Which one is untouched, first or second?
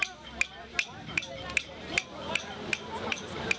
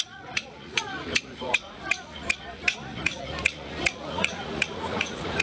first